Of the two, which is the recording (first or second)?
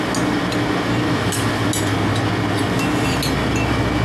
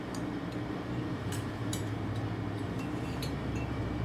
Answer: first